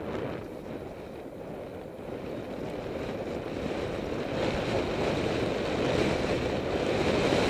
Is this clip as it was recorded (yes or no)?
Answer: yes